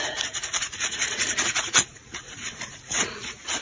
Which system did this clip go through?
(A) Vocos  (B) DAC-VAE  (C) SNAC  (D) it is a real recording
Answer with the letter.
A